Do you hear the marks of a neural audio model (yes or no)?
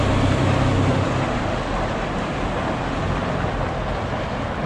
no